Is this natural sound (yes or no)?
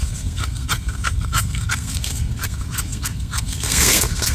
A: no